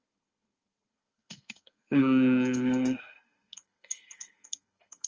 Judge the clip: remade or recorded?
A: remade